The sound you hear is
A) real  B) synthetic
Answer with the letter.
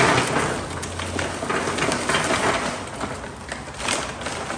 A